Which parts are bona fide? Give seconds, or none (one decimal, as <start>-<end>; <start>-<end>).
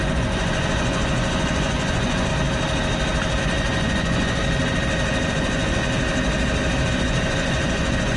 2.3-3.4; 4.4-5.3; 5.8-6.9